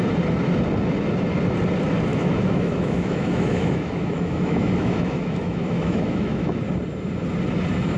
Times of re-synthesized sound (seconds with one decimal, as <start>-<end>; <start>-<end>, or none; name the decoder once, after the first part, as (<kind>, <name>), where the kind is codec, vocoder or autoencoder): 2.1-6.6 (autoencoder, DAC-VAE)